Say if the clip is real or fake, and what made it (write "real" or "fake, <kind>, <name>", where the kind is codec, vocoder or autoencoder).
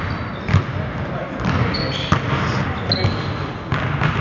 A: real